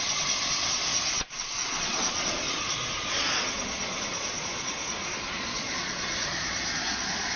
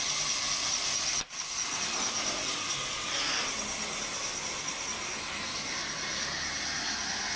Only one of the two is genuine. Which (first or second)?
second